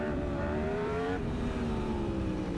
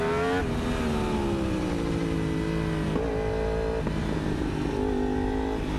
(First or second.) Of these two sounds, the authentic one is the second